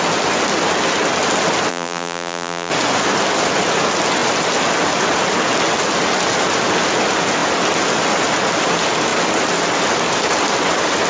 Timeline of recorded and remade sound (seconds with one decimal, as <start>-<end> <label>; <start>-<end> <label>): 0.0-1.7 recorded; 1.7-2.7 remade; 2.7-11.1 recorded